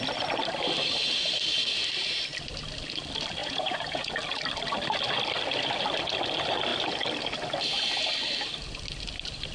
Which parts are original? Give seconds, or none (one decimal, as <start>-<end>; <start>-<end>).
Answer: 0.0-3.4; 4.1-9.5